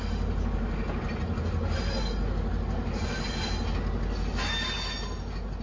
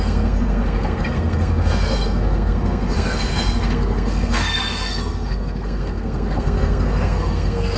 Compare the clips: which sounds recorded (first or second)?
first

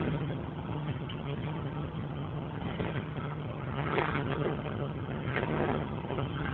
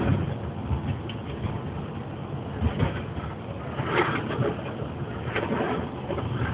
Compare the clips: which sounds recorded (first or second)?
second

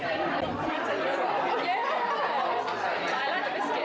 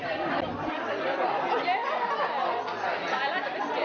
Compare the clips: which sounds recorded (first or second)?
second